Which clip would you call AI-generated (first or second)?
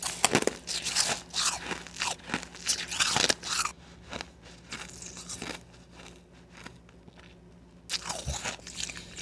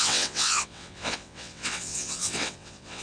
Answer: second